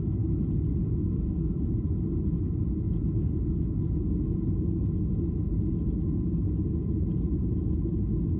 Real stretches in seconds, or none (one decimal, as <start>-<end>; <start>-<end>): 0.0-1.0; 1.5-8.4